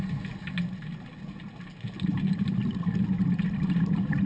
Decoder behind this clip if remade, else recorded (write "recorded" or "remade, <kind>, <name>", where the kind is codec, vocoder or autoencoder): recorded